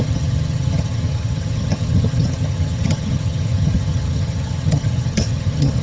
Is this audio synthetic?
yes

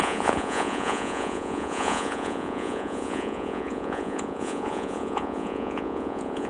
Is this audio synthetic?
yes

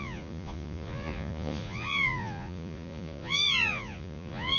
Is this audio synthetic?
yes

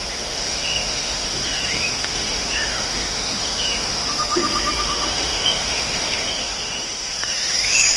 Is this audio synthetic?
yes